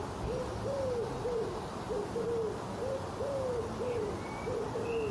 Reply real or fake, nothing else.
real